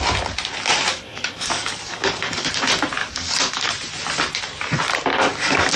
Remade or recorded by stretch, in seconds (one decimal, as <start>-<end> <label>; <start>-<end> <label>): 0.0-0.9 recorded; 0.9-2.5 remade; 2.5-3.0 recorded; 3.0-3.7 remade; 3.7-5.1 recorded; 5.1-5.8 remade